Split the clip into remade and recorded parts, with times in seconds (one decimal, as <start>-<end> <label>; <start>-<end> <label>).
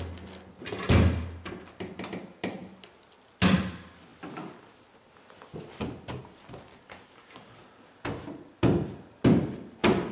0.0-10.1 recorded